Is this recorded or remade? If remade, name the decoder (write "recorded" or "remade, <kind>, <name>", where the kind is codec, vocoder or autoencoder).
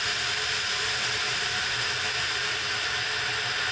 recorded